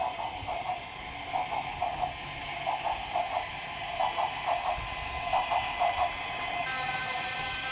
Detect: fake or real real